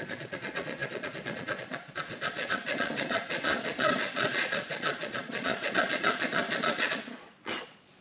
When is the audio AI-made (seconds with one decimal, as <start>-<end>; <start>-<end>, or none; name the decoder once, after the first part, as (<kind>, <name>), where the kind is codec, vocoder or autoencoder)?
0.0-8.0 (vocoder, Vocos)